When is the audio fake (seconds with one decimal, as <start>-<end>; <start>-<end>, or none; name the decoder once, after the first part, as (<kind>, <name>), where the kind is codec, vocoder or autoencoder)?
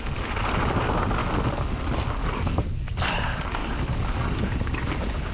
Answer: 1.2-1.8 (codec, DAC); 2.2-2.9; 3.6-4.4